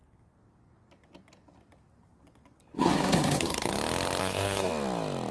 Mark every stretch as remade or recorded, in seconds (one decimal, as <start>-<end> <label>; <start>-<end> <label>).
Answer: 0.0-2.7 recorded; 2.7-3.7 remade; 3.7-4.2 recorded; 4.2-4.7 remade; 4.7-5.3 recorded

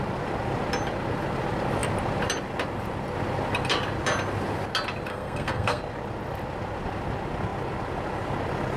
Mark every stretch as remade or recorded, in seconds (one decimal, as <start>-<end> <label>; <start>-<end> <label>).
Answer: 0.0-5.1 recorded; 5.1-5.8 remade; 5.8-8.8 recorded